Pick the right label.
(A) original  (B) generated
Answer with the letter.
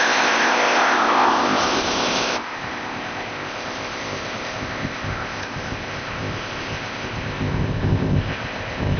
B